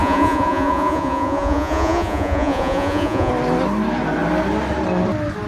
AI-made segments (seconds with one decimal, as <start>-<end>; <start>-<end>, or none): 0.0-3.3